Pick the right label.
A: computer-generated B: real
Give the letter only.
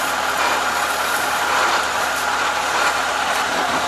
B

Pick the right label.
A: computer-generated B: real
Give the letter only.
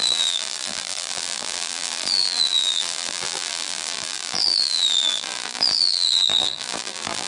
A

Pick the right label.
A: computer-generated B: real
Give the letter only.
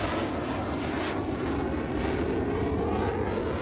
B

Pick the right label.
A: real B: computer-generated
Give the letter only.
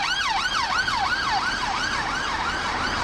B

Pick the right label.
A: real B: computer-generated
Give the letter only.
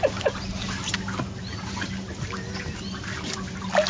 A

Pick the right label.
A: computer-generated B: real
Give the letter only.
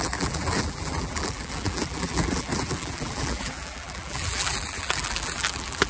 A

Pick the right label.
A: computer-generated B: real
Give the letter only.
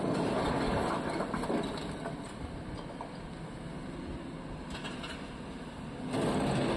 B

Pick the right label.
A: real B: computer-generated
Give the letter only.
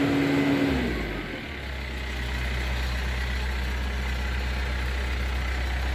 A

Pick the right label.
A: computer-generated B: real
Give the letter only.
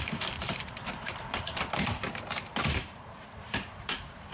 A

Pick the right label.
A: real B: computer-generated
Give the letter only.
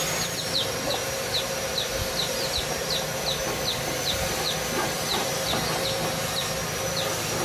B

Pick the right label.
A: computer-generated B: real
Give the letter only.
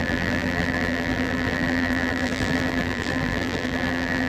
A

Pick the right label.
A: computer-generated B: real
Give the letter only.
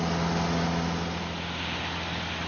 B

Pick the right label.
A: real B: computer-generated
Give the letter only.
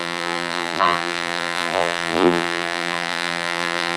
B